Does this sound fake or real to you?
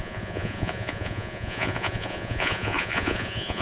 fake